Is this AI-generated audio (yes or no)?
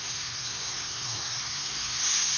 yes